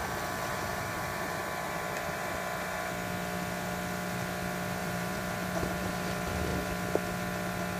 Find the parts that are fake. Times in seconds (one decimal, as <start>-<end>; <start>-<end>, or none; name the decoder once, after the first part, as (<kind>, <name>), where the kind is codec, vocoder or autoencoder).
0.7-1.4 (vocoder, BigVGAN v2); 4.8-5.9